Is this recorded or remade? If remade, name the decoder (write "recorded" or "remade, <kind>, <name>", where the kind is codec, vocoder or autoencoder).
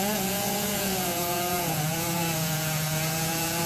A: remade, vocoder, Vocos